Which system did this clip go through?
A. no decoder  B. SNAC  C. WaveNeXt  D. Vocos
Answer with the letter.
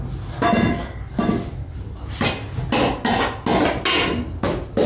A